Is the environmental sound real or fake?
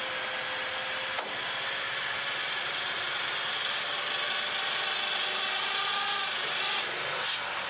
real